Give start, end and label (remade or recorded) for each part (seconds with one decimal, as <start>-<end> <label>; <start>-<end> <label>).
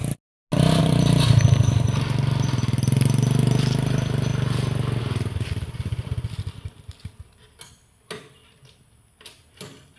0.0-10.0 recorded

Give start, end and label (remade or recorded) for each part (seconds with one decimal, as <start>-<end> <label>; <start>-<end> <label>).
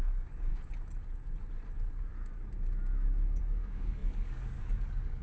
0.0-0.5 remade; 0.5-3.4 recorded; 3.4-5.2 remade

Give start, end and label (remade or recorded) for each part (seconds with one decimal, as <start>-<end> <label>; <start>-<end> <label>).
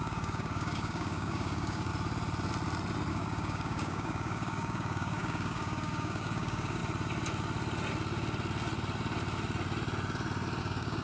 0.0-1.9 remade; 1.9-3.1 recorded; 3.1-6.8 remade; 6.8-10.6 recorded; 10.6-11.0 remade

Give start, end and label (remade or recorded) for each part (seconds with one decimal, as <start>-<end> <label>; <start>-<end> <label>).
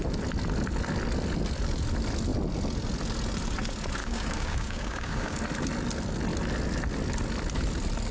0.0-4.0 recorded; 4.0-5.4 remade; 5.4-8.1 recorded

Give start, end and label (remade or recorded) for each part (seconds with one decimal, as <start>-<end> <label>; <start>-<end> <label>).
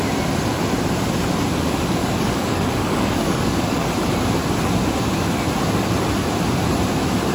0.0-2.0 recorded; 2.0-3.9 remade; 3.9-7.3 recorded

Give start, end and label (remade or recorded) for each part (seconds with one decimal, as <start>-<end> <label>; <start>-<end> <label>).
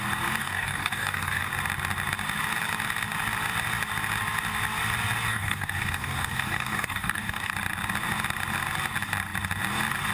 0.0-0.4 recorded; 0.4-1.5 remade; 1.5-5.3 recorded; 5.3-7.5 remade; 7.5-10.1 recorded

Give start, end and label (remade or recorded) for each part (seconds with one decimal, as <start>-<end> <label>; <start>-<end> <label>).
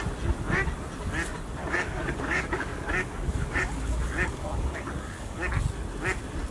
0.0-1.6 recorded; 1.6-5.5 remade; 5.5-6.5 recorded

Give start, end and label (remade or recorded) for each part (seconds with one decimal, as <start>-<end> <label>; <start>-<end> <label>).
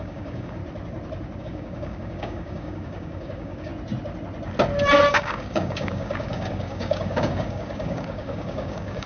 0.0-0.6 remade; 0.6-1.4 recorded; 1.4-3.7 remade; 3.7-5.1 recorded; 5.1-9.1 remade